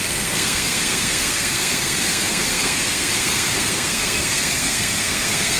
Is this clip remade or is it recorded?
remade